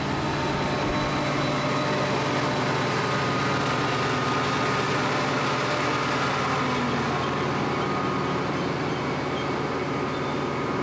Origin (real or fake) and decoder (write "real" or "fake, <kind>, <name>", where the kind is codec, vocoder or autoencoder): real